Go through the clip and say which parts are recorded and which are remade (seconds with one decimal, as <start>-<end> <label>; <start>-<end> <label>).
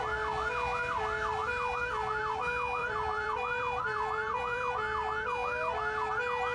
0.0-2.8 recorded; 2.8-4.7 remade; 4.7-6.5 recorded